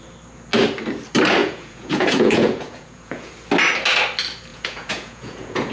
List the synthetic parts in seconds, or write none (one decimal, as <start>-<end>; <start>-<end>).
1.4-3.3; 4.5-5.7